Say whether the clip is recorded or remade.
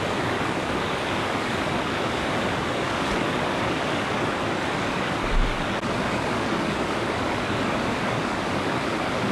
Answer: remade